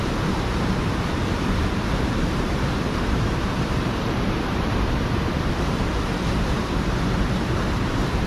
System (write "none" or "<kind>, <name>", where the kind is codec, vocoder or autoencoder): vocoder, BigVGAN v2